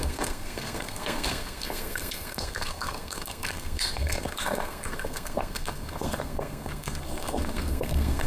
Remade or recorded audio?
remade